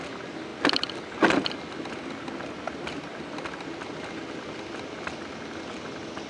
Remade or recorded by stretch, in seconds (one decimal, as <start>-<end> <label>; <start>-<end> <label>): 0.0-6.3 recorded